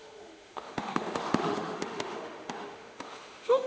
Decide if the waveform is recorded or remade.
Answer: remade